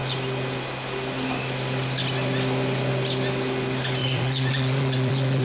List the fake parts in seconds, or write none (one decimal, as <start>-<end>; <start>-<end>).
4.0-5.4